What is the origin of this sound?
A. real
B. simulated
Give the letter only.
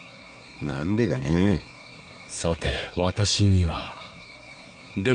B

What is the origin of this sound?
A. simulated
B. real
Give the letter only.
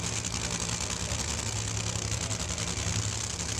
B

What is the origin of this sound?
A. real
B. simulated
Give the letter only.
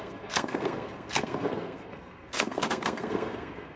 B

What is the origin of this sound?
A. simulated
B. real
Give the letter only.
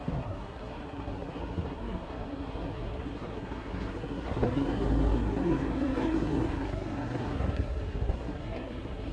A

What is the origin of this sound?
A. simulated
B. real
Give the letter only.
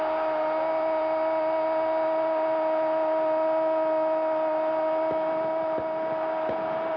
B